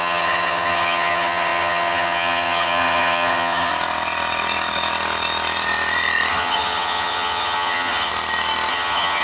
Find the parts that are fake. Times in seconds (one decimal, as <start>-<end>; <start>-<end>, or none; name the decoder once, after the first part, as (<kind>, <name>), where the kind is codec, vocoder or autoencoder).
0.0-3.7 (vocoder, HiFi-GAN); 6.3-8.1; 8.7-9.2